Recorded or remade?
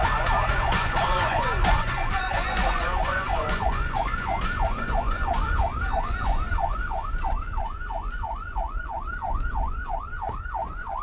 remade